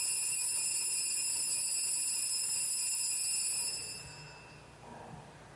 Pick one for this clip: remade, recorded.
recorded